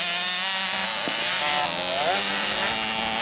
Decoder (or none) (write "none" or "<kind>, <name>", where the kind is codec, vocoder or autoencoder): none